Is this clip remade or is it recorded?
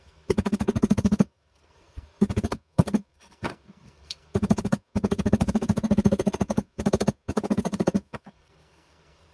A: remade